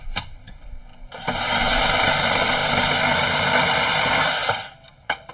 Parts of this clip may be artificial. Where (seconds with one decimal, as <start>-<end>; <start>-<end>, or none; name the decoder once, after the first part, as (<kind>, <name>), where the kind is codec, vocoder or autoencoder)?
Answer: 0.0-0.9 (vocoder, BigVGAN v2); 2.1-2.6; 3.5-4.4